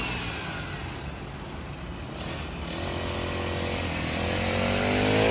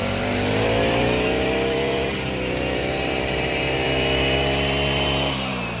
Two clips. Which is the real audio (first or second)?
first